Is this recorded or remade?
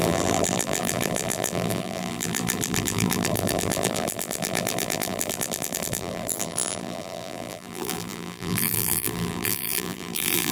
remade